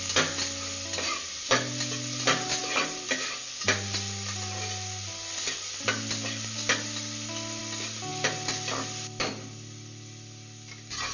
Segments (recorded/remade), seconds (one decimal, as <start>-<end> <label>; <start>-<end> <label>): 0.0-11.1 recorded